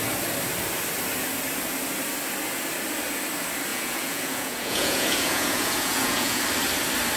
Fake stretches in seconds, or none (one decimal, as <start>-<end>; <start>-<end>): 3.7-6.4